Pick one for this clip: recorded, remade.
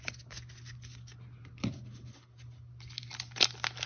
recorded